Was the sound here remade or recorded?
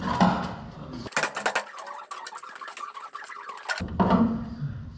recorded